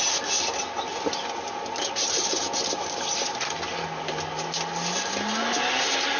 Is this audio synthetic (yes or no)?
no